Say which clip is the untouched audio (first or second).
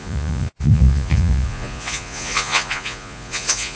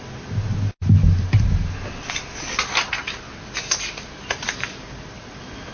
second